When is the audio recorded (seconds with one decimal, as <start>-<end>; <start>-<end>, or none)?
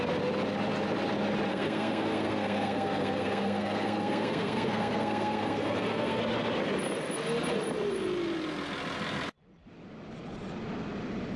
0.0-1.5; 6.2-11.4